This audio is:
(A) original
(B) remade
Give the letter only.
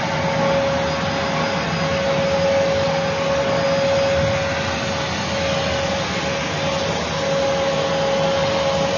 A